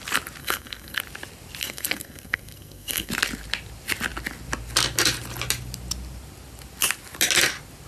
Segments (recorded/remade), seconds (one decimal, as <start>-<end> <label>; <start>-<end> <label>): 0.0-0.4 recorded; 0.4-1.0 remade; 1.0-1.6 recorded; 1.6-3.1 remade; 3.1-7.9 recorded